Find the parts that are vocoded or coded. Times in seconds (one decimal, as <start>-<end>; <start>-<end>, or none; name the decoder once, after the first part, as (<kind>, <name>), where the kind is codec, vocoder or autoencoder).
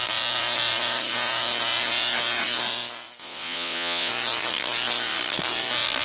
3.2-4.1 (vocoder, Vocos)